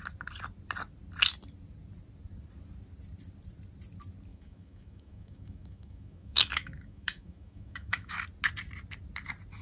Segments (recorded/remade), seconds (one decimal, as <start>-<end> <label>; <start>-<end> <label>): 0.0-4.3 recorded; 4.3-8.1 remade; 8.1-9.6 recorded